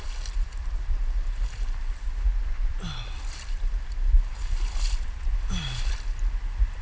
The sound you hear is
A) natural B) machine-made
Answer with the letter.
A